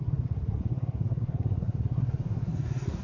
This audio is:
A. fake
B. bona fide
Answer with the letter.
A